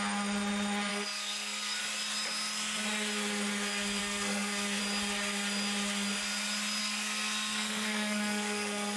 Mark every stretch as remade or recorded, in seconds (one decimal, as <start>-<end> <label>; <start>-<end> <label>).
0.0-0.9 recorded; 0.9-1.8 remade; 1.8-4.0 recorded; 4.0-4.8 remade; 4.8-6.8 recorded; 6.8-9.0 remade